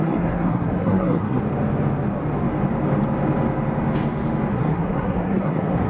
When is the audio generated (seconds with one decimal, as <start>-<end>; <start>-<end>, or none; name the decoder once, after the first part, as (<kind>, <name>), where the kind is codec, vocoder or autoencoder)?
0.0-1.4 (codec, SNAC); 4.5-5.9